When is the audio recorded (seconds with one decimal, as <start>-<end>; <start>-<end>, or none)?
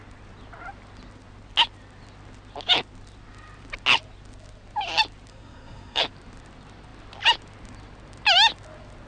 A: 0.0-5.3; 6.0-9.1